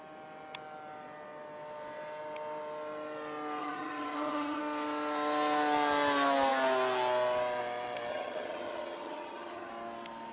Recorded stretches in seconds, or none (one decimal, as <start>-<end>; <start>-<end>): 0.0-3.6; 4.6-8.1; 9.7-10.3